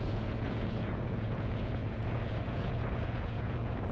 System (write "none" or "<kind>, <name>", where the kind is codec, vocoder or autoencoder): vocoder, Vocos